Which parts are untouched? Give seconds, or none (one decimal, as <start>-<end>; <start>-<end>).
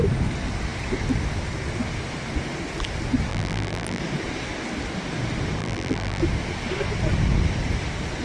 0.0-3.3; 4.0-5.6; 6.2-8.2